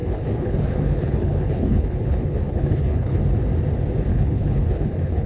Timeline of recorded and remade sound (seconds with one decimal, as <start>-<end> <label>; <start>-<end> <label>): 0.0-3.2 remade; 3.2-4.1 recorded; 4.1-5.3 remade

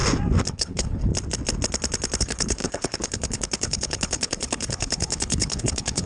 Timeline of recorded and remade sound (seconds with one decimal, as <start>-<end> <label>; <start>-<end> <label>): 0.0-0.5 recorded; 0.5-1.1 remade; 1.1-2.2 recorded; 2.2-6.1 remade